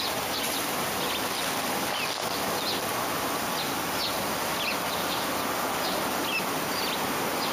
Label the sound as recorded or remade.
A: recorded